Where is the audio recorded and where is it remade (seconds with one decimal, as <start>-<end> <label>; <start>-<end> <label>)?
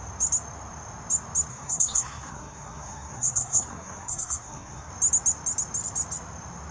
0.0-1.5 recorded; 1.5-4.9 remade; 4.9-6.7 recorded